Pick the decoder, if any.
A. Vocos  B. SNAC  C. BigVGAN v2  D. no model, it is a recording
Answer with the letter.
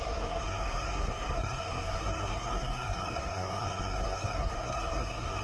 B